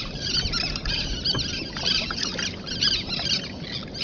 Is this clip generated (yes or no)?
no